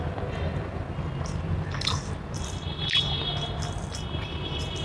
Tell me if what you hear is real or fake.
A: real